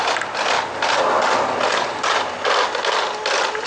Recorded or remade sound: recorded